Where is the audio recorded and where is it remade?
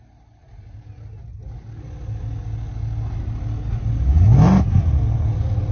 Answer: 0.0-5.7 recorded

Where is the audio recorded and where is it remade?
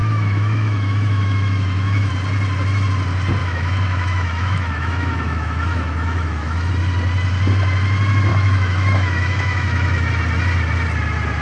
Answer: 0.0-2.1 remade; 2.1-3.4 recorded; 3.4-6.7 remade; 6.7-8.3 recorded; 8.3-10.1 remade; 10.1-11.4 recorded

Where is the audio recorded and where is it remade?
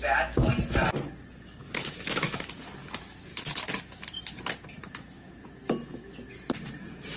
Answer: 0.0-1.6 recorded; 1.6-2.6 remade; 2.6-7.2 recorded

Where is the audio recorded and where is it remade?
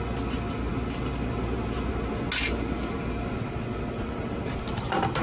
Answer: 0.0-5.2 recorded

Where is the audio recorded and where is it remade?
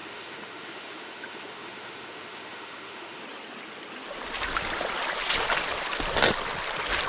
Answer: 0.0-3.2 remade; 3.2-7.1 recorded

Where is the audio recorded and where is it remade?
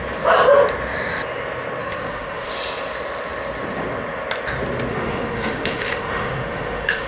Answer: 0.0-1.8 recorded; 1.8-2.5 remade; 2.5-4.9 recorded; 4.9-7.1 remade